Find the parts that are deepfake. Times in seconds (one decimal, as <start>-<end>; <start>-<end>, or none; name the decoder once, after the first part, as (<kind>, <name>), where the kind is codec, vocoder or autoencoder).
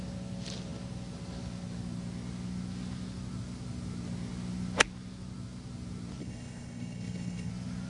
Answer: 6.2-7.5 (codec, HILCodec)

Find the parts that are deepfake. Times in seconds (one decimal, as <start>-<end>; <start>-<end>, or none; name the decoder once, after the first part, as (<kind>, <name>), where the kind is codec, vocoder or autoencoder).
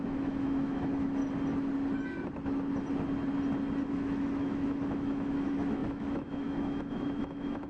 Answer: 0.0-1.2 (autoencoder, DAC-VAE); 3.9-7.7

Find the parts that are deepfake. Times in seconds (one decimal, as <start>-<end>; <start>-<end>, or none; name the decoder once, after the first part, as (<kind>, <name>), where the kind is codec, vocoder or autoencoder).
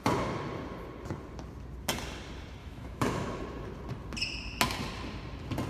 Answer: 2.6-3.4 (autoencoder, DAC-VAE)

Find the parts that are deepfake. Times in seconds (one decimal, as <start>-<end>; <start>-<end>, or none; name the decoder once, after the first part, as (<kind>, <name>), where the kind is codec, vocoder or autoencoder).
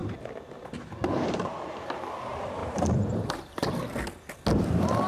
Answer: 2.6-3.7 (vocoder, BigVGAN v2)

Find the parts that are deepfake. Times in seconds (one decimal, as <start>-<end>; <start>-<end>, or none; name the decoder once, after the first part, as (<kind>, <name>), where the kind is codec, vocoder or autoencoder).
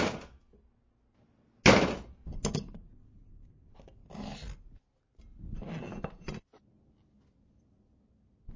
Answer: none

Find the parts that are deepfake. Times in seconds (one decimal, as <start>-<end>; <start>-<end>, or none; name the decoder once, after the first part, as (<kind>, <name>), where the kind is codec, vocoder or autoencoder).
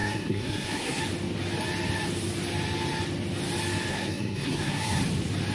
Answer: 0.0-1.0 (codec, SNAC); 3.9-5.0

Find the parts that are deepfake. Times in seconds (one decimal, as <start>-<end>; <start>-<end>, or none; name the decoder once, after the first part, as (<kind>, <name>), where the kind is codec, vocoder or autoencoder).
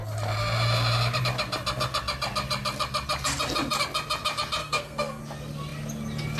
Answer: 4.6-5.2 (codec, SNAC)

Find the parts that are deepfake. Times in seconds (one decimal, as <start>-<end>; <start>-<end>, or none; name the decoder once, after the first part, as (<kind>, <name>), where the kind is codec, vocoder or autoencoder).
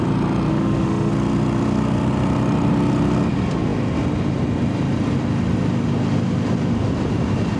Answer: 0.5-1.1 (autoencoder, DAC-VAE)